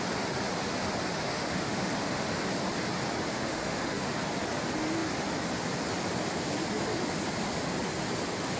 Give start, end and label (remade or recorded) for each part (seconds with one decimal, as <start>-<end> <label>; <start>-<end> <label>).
0.0-1.3 recorded; 1.3-2.4 remade; 2.4-3.3 recorded; 3.3-4.1 remade; 4.1-8.6 recorded